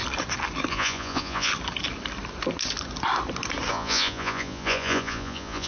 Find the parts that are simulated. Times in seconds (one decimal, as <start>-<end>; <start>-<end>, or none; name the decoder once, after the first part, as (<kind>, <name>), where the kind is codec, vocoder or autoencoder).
0.7-1.5 (vocoder, Vocos); 3.7-5.7